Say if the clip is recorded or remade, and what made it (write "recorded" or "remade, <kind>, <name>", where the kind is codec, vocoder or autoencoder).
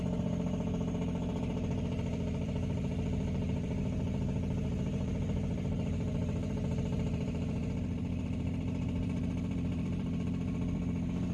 remade, vocoder, BigVGAN v2